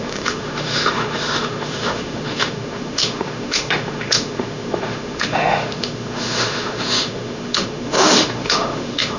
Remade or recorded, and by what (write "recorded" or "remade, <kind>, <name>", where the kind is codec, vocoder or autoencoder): remade, autoencoder, DAC-VAE